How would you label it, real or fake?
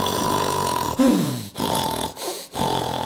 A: fake